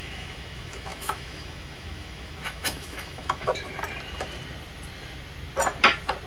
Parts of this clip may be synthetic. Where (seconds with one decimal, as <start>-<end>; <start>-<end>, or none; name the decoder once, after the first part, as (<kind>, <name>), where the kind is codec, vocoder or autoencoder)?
0.0-3.5 (autoencoder, DAC-VAE)

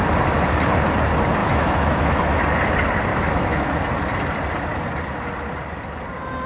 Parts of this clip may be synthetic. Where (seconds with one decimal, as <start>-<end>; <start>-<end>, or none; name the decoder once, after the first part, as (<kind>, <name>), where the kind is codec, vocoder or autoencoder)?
1.4-2.4 (autoencoder, DAC-VAE); 3.1-3.8